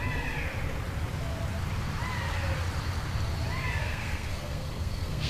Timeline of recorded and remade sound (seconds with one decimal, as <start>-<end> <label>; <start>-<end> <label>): 0.0-3.8 recorded; 3.8-5.3 remade